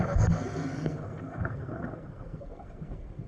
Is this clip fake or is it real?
fake